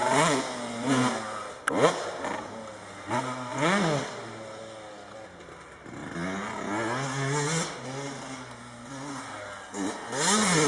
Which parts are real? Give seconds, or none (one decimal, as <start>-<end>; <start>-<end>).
0.0-10.7